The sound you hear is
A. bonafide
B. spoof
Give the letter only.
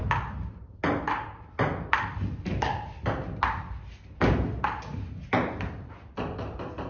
A